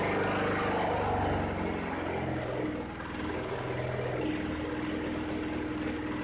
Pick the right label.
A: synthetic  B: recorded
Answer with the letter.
B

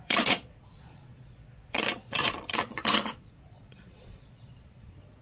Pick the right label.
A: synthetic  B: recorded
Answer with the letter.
A